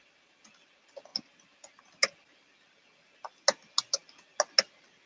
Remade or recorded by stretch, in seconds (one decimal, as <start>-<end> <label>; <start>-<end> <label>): 0.0-5.1 recorded